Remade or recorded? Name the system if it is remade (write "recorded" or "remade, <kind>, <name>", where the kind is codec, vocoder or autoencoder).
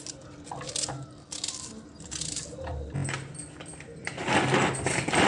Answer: recorded